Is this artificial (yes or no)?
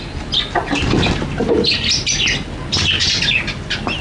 no